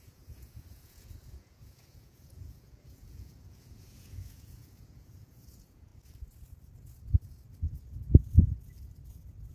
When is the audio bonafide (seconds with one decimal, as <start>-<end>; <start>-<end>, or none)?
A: 5.9-9.5